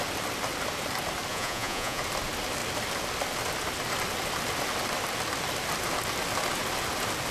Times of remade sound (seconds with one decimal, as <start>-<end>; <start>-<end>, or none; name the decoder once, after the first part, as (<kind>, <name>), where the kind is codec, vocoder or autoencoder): 1.3-2.0 (vocoder, Vocos)